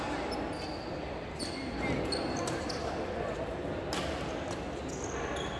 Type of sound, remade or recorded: recorded